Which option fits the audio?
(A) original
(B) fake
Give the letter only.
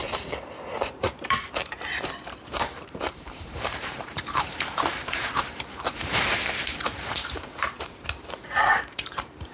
B